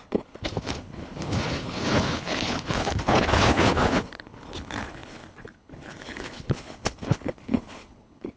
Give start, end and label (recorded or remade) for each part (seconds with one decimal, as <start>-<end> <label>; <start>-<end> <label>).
0.0-8.4 remade